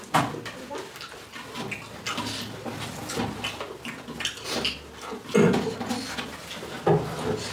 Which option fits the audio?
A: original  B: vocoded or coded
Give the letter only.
A